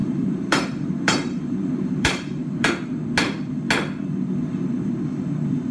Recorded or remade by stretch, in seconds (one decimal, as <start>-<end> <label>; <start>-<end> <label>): 0.0-2.7 remade; 2.7-5.7 recorded

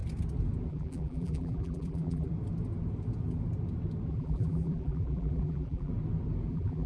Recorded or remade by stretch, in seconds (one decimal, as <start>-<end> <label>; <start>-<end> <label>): 0.0-0.7 recorded; 0.7-2.3 remade; 2.3-4.1 recorded; 4.1-5.9 remade; 5.9-6.5 recorded; 6.5-6.9 remade

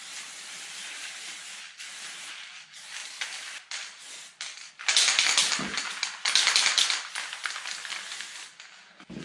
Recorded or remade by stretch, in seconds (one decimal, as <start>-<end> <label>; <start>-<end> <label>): 0.0-9.2 recorded

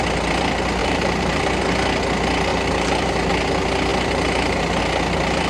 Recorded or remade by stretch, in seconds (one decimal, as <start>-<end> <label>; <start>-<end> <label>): 0.0-0.8 recorded; 0.8-1.6 remade; 1.6-2.5 recorded; 2.5-3.3 remade; 3.3-3.9 recorded; 3.9-4.8 remade; 4.8-5.5 recorded